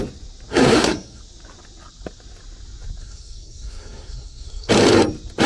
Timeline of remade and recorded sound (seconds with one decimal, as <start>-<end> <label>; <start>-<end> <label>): 0.0-0.5 recorded; 0.5-1.2 remade; 1.2-3.0 recorded; 3.0-4.7 remade; 4.7-5.5 recorded